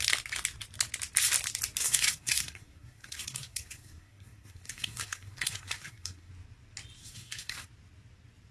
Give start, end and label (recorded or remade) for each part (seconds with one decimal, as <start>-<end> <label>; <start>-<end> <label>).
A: 0.0-1.8 recorded; 1.8-6.3 remade; 6.3-7.0 recorded; 7.0-7.7 remade; 7.7-8.5 recorded